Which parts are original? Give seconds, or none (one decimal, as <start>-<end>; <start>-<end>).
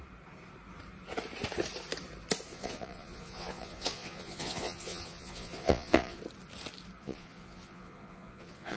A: 0.0-2.5; 6.2-7.0